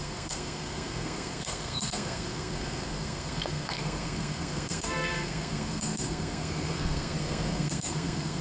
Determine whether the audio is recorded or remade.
remade